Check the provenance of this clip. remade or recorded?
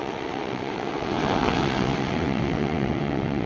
remade